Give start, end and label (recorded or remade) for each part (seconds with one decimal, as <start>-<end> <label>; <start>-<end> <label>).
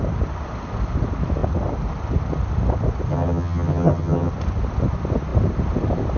0.0-3.1 recorded; 3.1-4.3 remade; 4.3-6.2 recorded